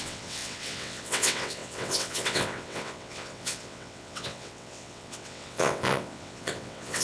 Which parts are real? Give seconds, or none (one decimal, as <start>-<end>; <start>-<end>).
none